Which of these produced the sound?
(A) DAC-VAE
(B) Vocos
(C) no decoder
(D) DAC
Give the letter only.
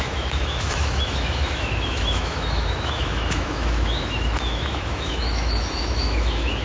A